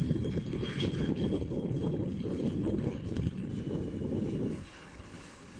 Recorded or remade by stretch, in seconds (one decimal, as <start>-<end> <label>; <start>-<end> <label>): 0.0-3.5 remade; 3.5-4.5 recorded; 4.5-5.6 remade